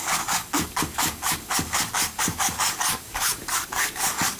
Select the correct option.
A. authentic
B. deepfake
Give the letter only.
B